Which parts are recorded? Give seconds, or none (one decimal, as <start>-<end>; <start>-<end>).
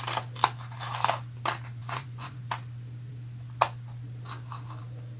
0.0-1.8; 2.4-5.2